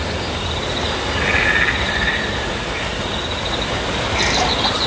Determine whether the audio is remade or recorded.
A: recorded